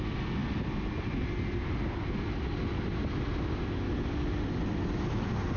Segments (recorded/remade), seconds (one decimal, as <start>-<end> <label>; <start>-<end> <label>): 0.0-5.6 recorded